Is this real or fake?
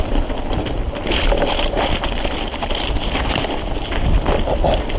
real